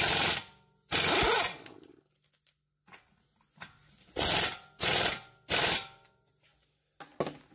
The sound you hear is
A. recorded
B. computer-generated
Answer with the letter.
A